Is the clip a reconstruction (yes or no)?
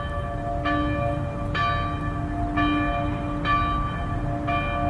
no